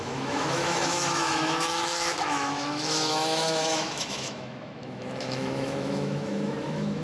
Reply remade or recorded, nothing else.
remade